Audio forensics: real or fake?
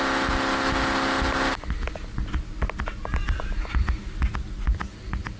real